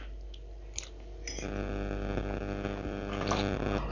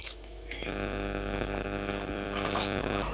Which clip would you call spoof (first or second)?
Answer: second